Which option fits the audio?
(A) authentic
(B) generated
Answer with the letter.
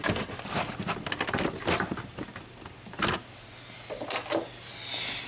A